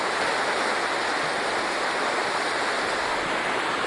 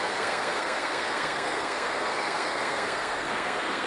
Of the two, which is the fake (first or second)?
second